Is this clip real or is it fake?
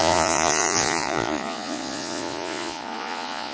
fake